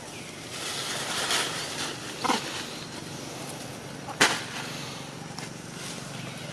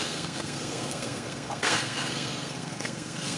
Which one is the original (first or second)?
first